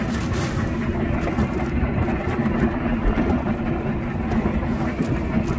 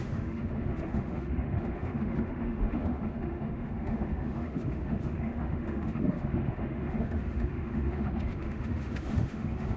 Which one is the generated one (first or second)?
second